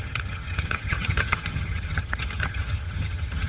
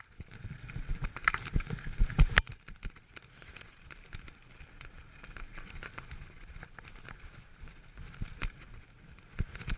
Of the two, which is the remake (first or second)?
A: first